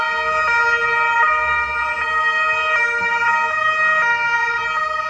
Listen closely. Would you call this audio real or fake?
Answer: real